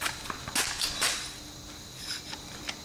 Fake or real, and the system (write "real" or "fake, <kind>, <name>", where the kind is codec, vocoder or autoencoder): real